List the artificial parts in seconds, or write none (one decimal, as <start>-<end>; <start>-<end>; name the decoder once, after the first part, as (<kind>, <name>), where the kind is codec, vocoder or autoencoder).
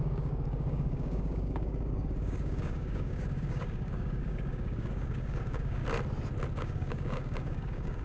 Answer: 0.0-5.8 (codec, DAC); 6.5-8.0